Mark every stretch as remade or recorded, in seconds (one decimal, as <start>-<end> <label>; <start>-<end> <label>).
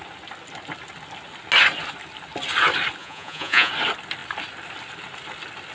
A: 0.0-3.0 recorded; 3.0-3.7 remade; 3.7-5.7 recorded